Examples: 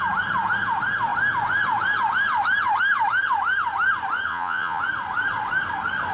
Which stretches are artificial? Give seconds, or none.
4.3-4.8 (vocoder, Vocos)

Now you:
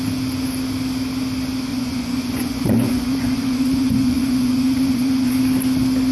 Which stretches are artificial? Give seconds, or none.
1.7-5.3 (vocoder, Vocos)

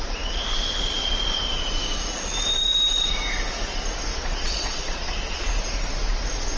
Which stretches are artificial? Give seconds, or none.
4.1-5.5 (vocoder, Vocos)

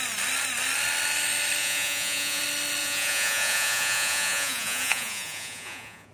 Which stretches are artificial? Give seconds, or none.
1.6-2.4 (vocoder, Vocos); 2.8-6.1

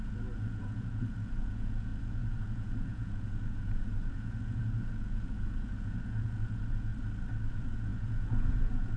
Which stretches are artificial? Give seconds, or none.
0.0-6.9 (vocoder, Vocos); 7.5-9.0

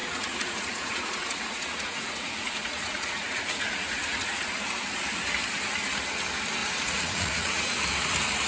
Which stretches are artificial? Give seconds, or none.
0.0-4.6 (vocoder, Vocos); 6.6-7.8

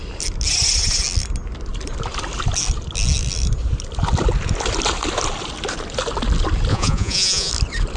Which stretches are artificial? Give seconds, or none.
6.7-7.5 (vocoder, Vocos)

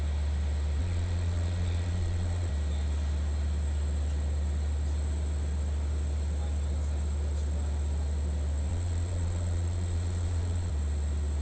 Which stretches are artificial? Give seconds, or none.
0.8-2.5 (vocoder, Vocos); 8.7-10.7